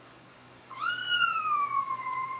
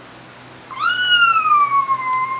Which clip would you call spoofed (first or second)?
first